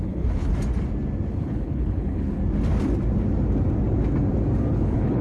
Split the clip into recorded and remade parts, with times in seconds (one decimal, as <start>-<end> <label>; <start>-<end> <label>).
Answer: 0.0-0.5 remade; 0.5-1.3 recorded; 1.3-2.4 remade; 2.4-4.7 recorded; 4.7-5.2 remade